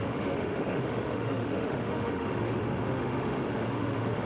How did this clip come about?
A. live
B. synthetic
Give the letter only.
B